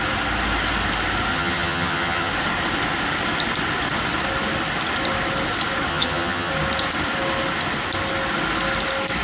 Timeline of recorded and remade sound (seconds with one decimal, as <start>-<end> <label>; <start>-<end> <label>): 0.0-1.3 recorded; 1.3-2.3 remade; 2.3-5.9 recorded; 5.9-6.5 remade; 6.5-9.2 recorded